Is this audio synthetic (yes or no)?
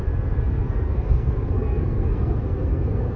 yes